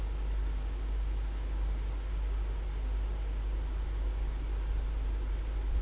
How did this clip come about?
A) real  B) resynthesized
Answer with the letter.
A